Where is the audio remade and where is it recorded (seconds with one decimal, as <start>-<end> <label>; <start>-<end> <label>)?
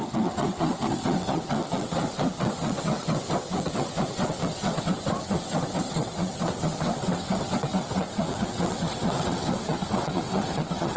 0.0-11.0 remade